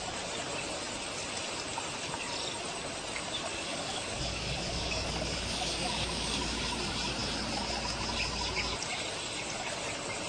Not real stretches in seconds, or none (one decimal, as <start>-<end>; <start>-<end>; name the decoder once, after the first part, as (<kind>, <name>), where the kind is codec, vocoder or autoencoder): 3.5-6.7 (codec, DAC)